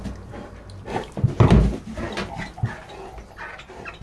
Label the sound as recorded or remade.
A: recorded